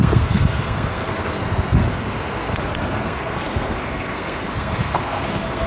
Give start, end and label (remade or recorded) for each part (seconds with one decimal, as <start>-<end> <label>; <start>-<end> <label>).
0.0-5.7 remade